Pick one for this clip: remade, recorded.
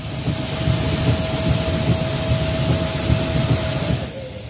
recorded